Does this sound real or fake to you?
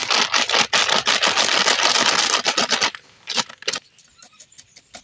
real